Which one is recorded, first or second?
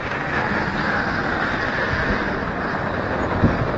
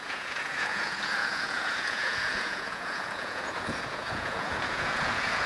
first